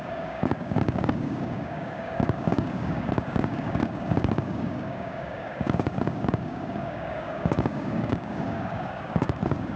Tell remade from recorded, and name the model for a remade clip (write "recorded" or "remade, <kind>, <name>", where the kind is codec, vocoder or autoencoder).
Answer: remade, codec, DAC